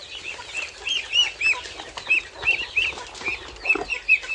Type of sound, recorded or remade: recorded